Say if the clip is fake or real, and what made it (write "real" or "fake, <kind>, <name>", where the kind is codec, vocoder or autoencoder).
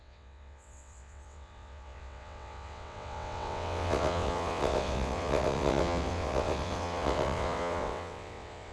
fake, vocoder, WaveNeXt